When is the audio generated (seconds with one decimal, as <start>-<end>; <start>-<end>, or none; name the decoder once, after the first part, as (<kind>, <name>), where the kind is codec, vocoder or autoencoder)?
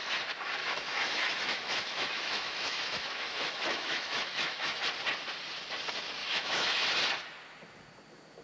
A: 0.6-4.8 (autoencoder, DAC-VAE); 6.2-6.9